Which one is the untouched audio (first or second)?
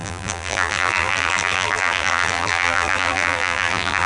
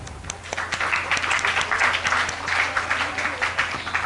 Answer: second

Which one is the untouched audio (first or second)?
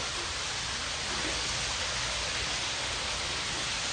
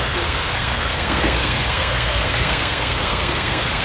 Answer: first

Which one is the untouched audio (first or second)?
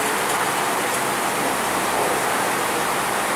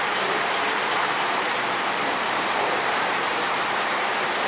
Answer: first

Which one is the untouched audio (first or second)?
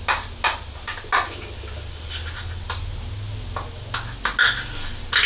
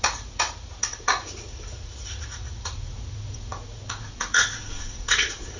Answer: first